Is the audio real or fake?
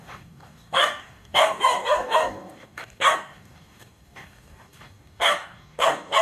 fake